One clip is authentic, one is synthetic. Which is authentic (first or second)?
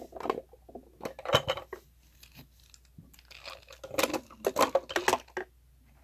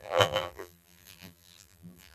first